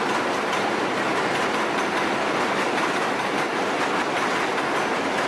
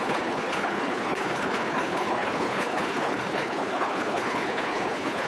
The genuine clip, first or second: first